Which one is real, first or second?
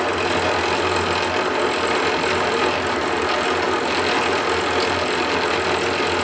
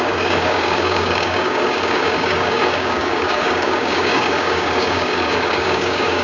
first